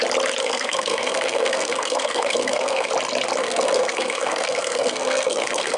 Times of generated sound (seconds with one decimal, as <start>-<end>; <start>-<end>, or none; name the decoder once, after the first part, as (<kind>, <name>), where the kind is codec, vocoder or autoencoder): 0.4-2.9 (codec, SNAC); 3.4-5.8